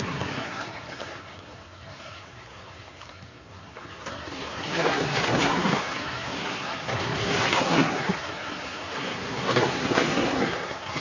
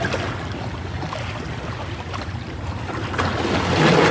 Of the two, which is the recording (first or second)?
second